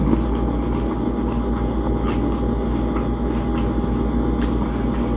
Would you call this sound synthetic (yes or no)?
no